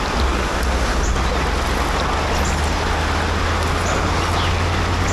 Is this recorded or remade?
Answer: recorded